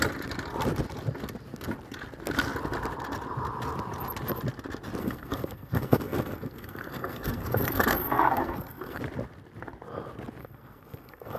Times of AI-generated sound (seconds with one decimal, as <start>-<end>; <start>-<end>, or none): 5.0-9.0; 10.4-11.4